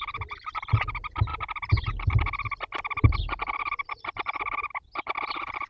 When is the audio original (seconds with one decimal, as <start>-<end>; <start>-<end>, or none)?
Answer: 0.0-5.7